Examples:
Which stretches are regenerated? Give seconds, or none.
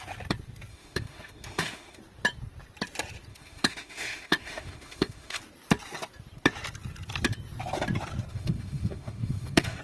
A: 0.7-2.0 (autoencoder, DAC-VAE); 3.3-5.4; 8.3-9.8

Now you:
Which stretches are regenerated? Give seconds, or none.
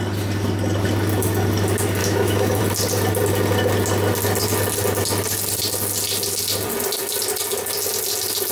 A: 2.0-2.6 (autoencoder, DAC-VAE)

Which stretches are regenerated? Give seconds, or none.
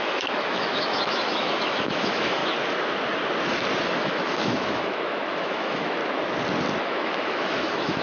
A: 0.0-2.4 (autoencoder, DAC-VAE); 3.9-6.0; 6.8-8.0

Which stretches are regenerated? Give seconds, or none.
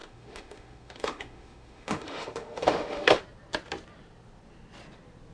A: 0.0-3.2 (autoencoder, DAC-VAE)